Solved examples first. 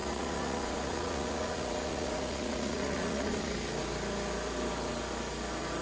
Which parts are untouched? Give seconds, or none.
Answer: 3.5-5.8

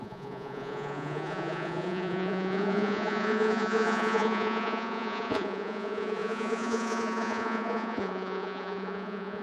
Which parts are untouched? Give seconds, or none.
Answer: none

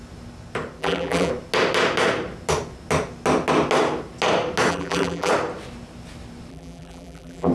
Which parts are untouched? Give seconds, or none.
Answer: 0.0-0.8; 1.3-4.7; 5.3-6.5

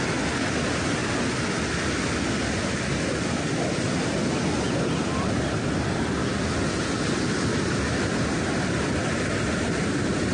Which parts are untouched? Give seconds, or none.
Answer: 0.0-10.3

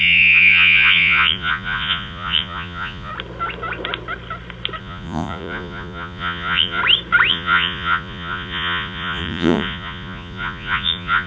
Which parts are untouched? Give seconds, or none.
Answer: 3.1-4.8; 6.8-7.3

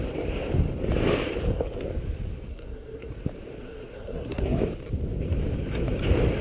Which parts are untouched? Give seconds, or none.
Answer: 0.0-2.5; 3.1-3.6; 4.6-6.4